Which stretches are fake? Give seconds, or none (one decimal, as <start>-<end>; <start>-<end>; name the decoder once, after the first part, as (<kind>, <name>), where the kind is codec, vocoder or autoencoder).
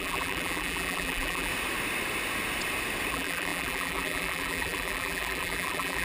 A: 0.0-1.5 (vocoder, BigVGAN v2); 3.1-6.0